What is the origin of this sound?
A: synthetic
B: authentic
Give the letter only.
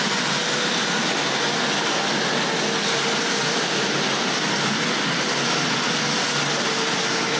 B